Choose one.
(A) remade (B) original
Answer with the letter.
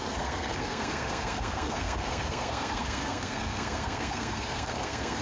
A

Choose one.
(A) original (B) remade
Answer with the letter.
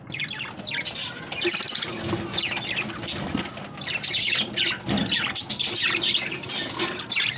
A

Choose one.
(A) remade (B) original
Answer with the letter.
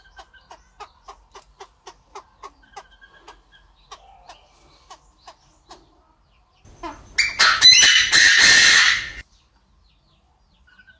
B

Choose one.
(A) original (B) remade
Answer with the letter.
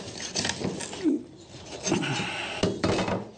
A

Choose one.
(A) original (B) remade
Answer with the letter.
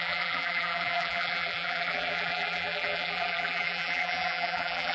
B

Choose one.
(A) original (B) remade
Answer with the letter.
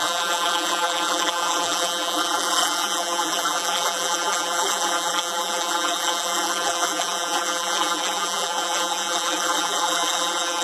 B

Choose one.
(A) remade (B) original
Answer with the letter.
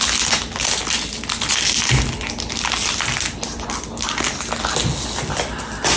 B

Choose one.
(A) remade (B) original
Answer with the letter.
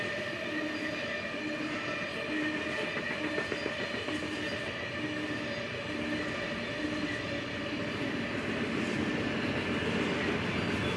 B